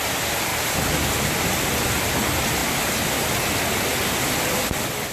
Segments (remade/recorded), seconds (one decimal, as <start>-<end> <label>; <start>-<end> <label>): 0.0-2.6 remade; 2.6-5.1 recorded